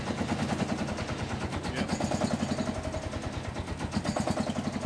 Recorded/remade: recorded